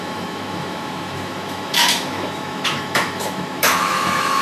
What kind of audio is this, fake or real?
fake